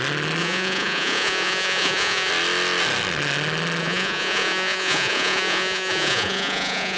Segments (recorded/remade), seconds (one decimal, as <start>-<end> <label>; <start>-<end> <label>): 0.0-0.4 recorded; 0.4-2.3 remade; 2.3-3.8 recorded; 3.8-7.0 remade